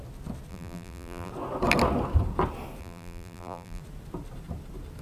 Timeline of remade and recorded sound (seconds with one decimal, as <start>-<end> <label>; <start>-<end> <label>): 0.0-0.5 recorded; 0.5-1.3 remade; 1.3-2.8 recorded; 2.8-3.8 remade; 3.8-5.0 recorded

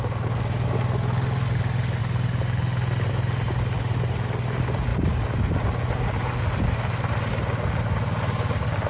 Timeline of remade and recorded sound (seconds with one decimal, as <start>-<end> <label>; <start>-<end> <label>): 0.0-8.9 recorded

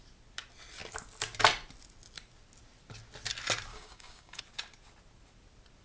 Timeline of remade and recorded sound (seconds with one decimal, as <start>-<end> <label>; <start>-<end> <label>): 0.0-3.7 recorded; 3.7-4.4 remade; 4.4-5.8 recorded

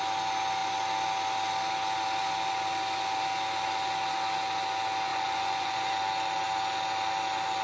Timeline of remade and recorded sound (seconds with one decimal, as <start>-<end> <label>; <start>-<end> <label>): 0.0-5.1 recorded; 5.1-5.9 remade; 5.9-7.6 recorded

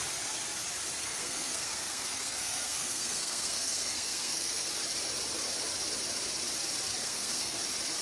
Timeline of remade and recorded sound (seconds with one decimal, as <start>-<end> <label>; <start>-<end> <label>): 0.0-1.0 recorded; 1.0-4.7 remade; 4.7-7.0 recorded; 7.0-7.6 remade; 7.6-8.0 recorded

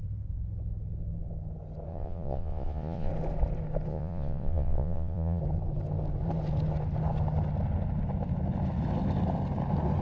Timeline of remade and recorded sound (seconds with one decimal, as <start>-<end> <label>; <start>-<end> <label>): 0.0-1.9 recorded; 1.9-3.1 remade; 3.1-3.9 recorded; 3.9-5.4 remade; 5.4-10.0 recorded

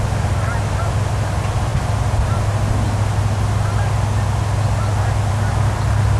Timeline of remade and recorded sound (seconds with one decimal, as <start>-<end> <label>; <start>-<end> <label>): 0.0-6.2 recorded